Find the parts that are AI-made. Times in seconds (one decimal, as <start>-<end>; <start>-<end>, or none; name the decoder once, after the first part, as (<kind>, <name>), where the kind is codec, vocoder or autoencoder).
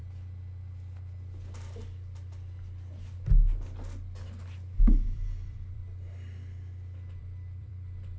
4.9-5.8 (vocoder, BigVGAN v2); 7.2-8.2